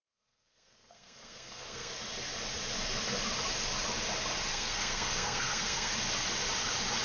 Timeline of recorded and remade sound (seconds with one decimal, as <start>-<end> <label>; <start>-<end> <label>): 0.0-1.9 remade; 1.9-4.5 recorded; 4.5-5.9 remade; 5.9-7.0 recorded